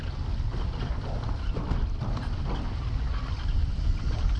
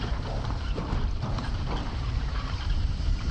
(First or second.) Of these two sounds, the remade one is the second